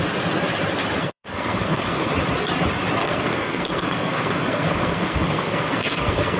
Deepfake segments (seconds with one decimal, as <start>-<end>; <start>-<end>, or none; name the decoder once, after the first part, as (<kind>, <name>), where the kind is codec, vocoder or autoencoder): 1.0-2.1 (codec, SNAC); 3.0-6.4

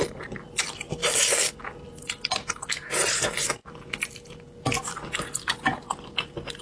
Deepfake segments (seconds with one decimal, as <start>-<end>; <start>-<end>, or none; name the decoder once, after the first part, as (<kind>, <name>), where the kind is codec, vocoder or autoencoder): 1.0-2.5 (vocoder, BigVGAN v2)

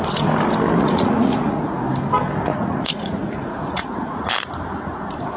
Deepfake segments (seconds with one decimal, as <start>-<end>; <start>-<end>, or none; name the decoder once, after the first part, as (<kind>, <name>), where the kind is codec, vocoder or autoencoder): 0.8-1.8 (vocoder, Vocos); 2.5-4.3